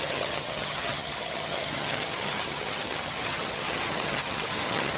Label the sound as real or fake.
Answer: fake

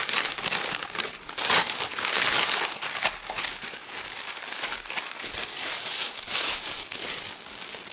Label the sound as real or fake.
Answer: fake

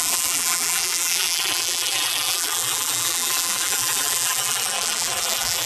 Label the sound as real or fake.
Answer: fake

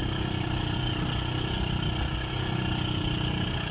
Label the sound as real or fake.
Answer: real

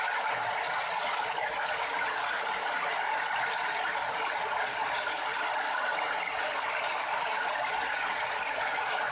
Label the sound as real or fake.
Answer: real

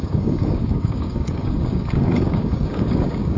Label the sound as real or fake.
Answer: fake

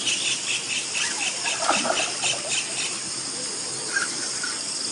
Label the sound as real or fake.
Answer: real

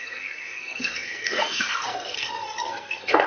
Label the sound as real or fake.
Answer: fake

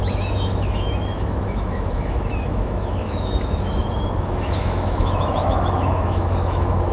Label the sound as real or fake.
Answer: fake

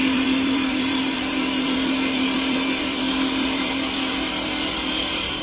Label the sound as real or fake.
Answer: fake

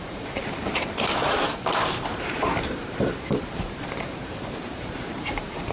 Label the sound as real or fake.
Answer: fake